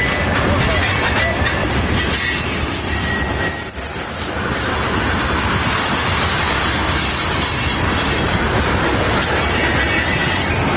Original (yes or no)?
yes